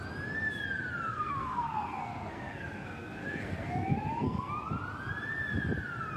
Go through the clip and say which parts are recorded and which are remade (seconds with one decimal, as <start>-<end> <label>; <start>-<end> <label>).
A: 0.0-1.1 recorded; 1.1-4.5 remade; 4.5-6.2 recorded